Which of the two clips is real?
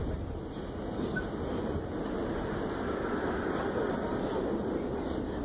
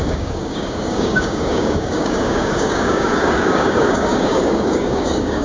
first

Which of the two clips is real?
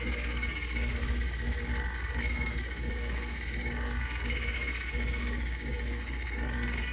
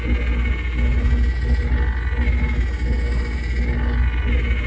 second